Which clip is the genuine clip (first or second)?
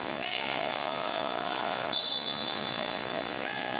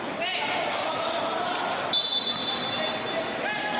second